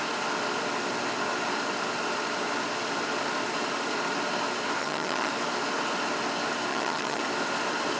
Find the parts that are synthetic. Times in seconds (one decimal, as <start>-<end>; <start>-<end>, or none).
4.8-5.3; 6.7-7.2